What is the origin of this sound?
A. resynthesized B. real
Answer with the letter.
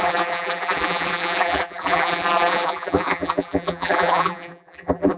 A